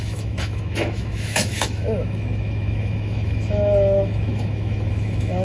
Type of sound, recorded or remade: remade